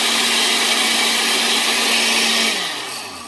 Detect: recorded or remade recorded